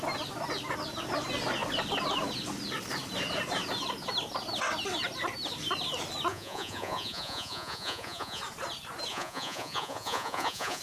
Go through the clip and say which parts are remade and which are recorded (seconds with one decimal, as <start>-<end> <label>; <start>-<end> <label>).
0.0-6.3 recorded; 6.3-8.4 remade; 8.4-9.1 recorded; 9.1-10.8 remade